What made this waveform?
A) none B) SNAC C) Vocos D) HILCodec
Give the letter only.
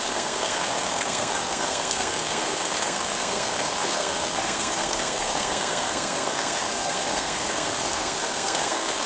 B